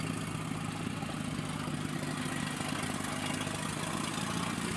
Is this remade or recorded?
recorded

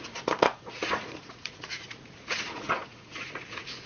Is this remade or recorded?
remade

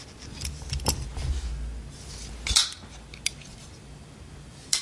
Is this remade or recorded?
recorded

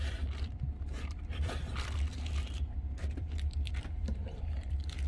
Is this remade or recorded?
remade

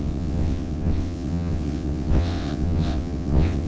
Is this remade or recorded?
remade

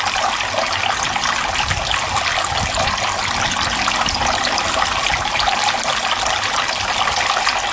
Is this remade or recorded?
recorded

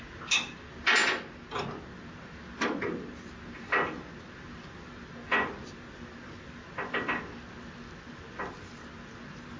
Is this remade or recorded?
recorded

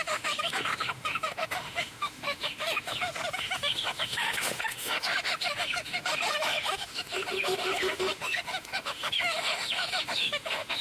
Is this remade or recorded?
remade